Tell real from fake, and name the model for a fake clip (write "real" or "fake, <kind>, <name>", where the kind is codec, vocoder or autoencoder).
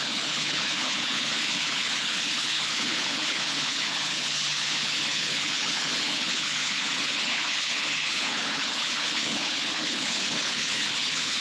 fake, codec, HILCodec